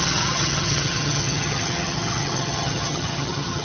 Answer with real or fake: fake